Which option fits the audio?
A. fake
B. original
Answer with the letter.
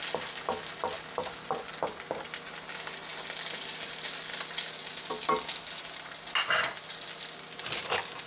B